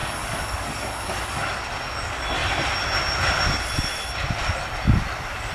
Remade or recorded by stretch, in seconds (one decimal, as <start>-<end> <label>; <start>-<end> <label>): 0.0-1.6 remade; 1.6-5.5 recorded